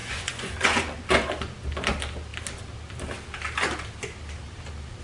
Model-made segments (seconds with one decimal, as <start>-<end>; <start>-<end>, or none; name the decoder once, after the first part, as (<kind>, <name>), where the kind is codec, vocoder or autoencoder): 0.0-1.0 (vocoder, Vocos)